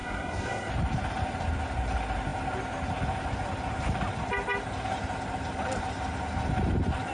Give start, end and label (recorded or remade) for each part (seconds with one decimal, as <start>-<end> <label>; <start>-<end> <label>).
0.0-0.7 remade; 0.7-7.1 recorded

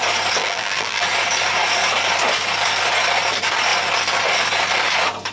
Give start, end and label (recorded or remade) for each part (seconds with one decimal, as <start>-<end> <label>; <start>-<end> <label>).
0.0-0.4 recorded; 0.4-1.0 remade; 1.0-5.3 recorded